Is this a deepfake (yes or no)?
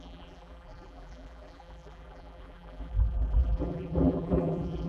yes